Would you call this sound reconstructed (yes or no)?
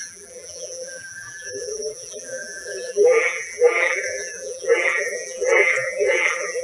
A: yes